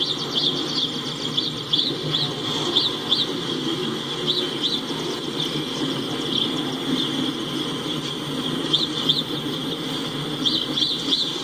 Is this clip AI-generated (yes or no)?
no